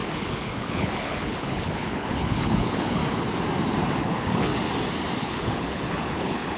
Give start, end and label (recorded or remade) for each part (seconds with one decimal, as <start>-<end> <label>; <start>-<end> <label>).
0.0-3.0 remade; 3.0-4.0 recorded; 4.0-4.5 remade; 4.5-5.2 recorded; 5.2-6.6 remade